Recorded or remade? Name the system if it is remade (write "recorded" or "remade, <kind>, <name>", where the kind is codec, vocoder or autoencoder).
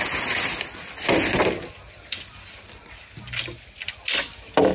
recorded